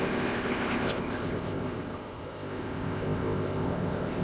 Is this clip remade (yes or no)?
yes